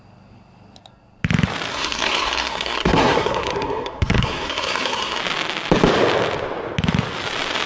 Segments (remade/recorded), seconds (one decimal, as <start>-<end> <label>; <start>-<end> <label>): 0.0-1.7 recorded; 1.7-5.2 remade; 5.2-7.7 recorded